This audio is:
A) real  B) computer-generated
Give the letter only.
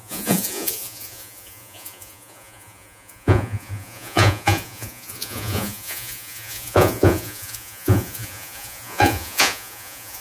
B